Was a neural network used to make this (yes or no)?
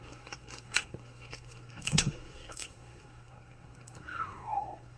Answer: yes